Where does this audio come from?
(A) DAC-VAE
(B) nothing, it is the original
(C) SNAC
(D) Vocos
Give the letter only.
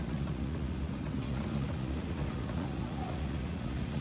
D